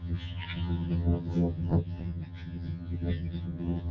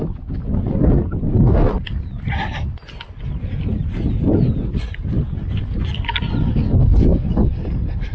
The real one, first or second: second